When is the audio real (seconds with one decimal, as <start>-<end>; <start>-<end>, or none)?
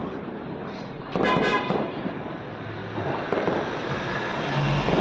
1.0-1.5; 2.4-2.8; 3.9-5.0